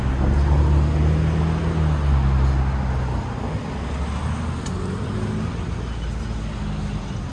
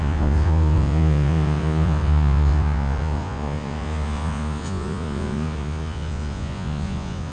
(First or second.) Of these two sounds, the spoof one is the second